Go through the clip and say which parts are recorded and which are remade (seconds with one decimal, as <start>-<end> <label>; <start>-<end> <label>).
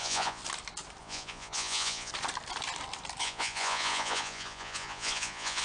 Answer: 0.0-0.4 remade; 0.4-1.0 recorded; 1.0-2.1 remade; 2.1-3.2 recorded; 3.2-5.6 remade